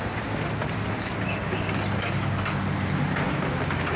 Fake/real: real